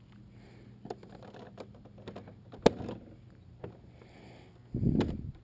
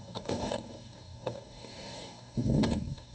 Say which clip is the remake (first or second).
second